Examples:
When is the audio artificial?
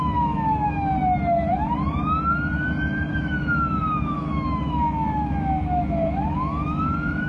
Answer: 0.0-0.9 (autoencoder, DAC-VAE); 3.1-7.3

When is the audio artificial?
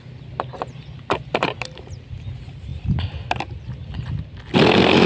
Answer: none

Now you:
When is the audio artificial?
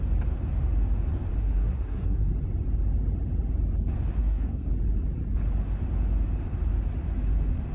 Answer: 1.4-2.3 (codec, SNAC); 4.2-4.7